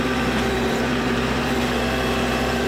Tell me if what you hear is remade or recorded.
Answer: remade